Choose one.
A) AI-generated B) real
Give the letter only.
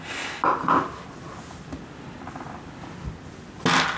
B